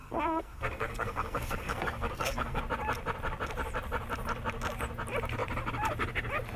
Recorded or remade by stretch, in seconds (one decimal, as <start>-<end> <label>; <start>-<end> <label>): 0.0-2.6 remade; 2.6-6.6 recorded